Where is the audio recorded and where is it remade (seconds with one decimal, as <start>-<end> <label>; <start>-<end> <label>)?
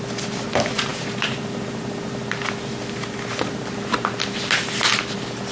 0.0-5.5 recorded